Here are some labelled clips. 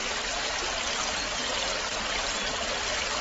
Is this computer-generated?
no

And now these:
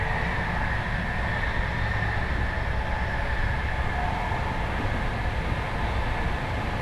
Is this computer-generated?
no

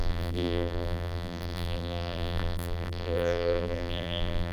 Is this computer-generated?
yes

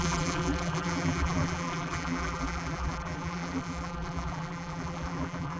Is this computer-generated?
yes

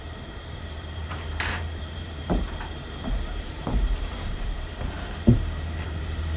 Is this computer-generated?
yes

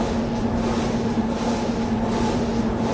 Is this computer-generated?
no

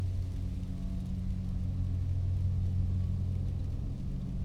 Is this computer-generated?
no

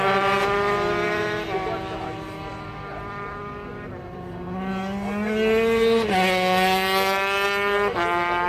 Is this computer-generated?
no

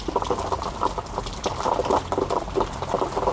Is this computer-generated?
no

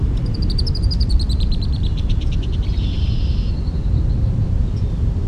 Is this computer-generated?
yes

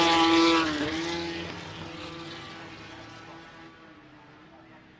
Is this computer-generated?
no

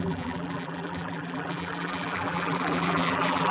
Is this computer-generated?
yes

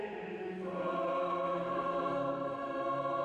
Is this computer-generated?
no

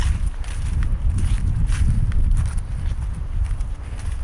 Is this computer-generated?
yes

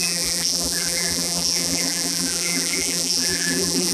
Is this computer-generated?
yes